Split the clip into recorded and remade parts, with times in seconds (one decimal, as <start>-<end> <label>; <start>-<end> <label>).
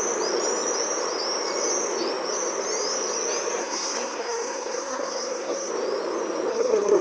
0.0-3.6 recorded; 3.6-5.7 remade; 5.7-6.5 recorded; 6.5-7.0 remade